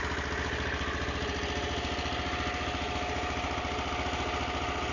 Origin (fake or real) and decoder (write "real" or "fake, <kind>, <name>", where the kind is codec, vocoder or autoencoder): real